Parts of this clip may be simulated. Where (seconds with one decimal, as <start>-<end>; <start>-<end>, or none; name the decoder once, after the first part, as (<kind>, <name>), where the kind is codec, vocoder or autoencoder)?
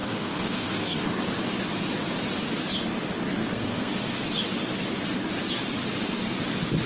0.0-1.0 (codec, SNAC); 3.4-3.9